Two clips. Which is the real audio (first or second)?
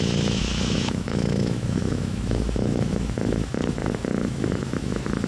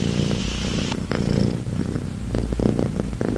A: second